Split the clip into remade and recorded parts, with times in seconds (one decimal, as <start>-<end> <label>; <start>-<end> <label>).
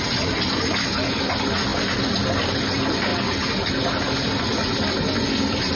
0.0-5.8 recorded